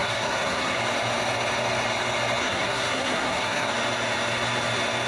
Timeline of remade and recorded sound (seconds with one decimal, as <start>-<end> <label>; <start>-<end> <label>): 0.0-0.8 remade; 0.8-2.4 recorded; 2.4-3.7 remade; 3.7-5.1 recorded